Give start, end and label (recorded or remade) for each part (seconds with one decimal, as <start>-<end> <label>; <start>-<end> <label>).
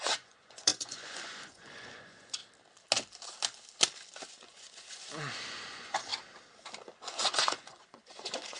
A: 0.0-2.4 remade; 2.4-4.3 recorded; 4.3-6.1 remade; 6.1-6.9 recorded; 6.9-8.6 remade